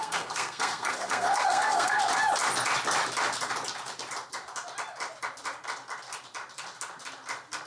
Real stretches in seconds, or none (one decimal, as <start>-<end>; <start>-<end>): 2.0-7.7